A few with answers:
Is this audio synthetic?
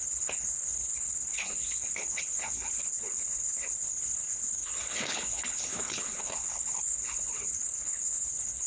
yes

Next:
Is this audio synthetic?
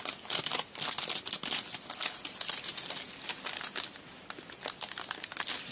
no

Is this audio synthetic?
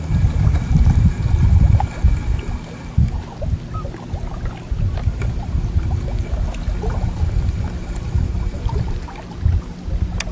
no